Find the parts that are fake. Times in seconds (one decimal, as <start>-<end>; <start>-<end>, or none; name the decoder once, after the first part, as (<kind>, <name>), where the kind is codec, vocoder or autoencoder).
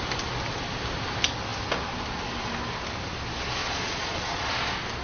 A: 3.6-4.5 (vocoder, Vocos)